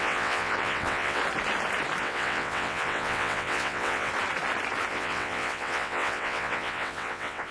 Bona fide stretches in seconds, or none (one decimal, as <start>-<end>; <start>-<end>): 1.2-2.0; 4.1-4.9